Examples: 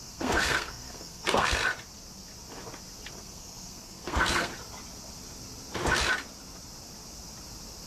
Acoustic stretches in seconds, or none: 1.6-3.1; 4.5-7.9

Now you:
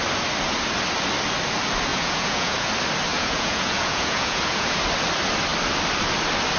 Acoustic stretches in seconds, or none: 0.0-1.9; 2.7-3.1; 4.8-6.6

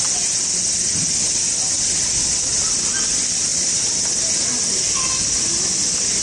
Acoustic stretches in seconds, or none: 0.0-6.2

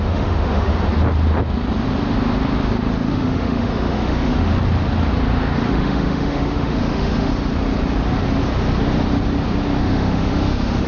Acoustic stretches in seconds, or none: 0.7-3.1; 4.5-5.7; 7.3-9.8